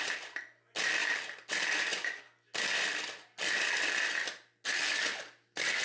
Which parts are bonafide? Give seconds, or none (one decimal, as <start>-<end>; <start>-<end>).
0.0-5.8